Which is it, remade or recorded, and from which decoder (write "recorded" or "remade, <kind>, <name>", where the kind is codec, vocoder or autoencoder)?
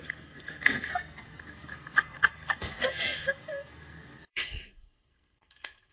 remade, codec, SNAC